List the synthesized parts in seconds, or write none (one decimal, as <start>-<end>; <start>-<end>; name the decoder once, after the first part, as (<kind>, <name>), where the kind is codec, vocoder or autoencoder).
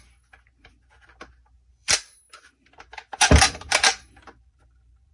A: 1.7-5.1 (vocoder, BigVGAN v2)